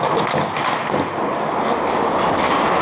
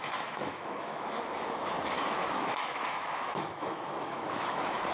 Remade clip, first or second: second